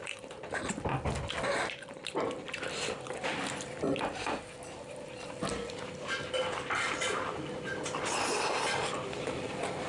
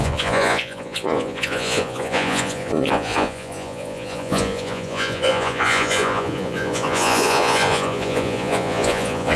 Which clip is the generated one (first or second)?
second